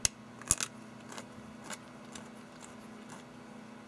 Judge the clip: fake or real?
real